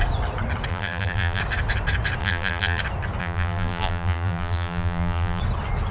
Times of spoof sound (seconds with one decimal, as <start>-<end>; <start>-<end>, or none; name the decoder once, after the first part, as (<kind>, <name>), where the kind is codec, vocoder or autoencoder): 0.7-1.4 (vocoder, BigVGAN v2); 2.2-2.8; 3.2-5.4

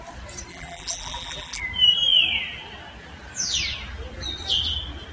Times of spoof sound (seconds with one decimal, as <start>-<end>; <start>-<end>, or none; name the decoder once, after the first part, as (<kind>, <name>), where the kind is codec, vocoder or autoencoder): 0.5-1.6 (vocoder, BigVGAN v2)

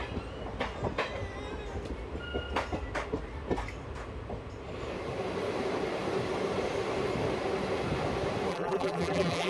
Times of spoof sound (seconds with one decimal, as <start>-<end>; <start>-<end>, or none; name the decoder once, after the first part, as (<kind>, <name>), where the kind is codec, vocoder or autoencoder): 8.5-9.5 (vocoder, BigVGAN v2)

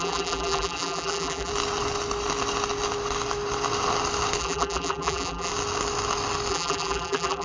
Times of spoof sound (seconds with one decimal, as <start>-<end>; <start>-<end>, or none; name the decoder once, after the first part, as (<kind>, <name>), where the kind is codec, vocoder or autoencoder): 0.0-1.5 (vocoder, BigVGAN v2); 4.4-5.5; 6.5-7.4

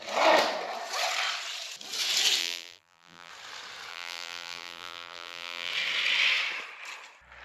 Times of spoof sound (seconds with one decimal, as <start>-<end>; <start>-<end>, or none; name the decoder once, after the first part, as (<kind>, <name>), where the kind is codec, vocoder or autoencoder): 2.4-3.3 (vocoder, BigVGAN v2); 3.9-5.7

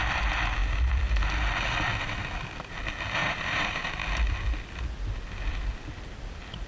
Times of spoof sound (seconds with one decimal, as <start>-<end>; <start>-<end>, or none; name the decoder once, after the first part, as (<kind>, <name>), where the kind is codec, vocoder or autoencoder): 3.2-3.8 (vocoder, BigVGAN v2)

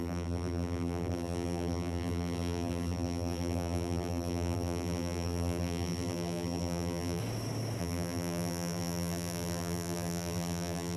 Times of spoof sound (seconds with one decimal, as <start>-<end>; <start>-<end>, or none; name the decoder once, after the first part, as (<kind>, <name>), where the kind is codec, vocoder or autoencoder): 0.0-7.2 (vocoder, BigVGAN v2); 7.8-11.0

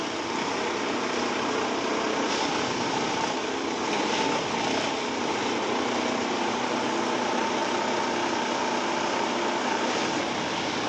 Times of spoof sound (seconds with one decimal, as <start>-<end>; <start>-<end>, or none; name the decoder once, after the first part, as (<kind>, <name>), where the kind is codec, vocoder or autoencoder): 7.6-10.5 (vocoder, BigVGAN v2)